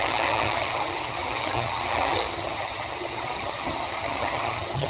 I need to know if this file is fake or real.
fake